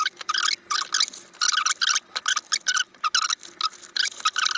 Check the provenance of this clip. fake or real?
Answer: real